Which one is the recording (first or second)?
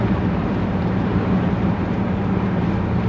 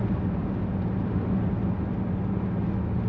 second